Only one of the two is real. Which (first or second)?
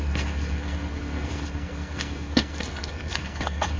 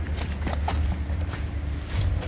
second